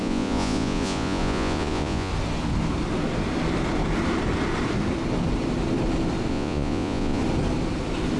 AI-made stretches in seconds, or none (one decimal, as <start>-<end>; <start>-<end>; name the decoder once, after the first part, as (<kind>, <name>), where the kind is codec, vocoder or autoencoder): 0.0-2.1 (vocoder, Vocos); 6.3-7.2